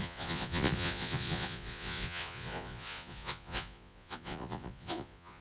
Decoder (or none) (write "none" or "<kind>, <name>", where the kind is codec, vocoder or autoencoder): vocoder, Vocos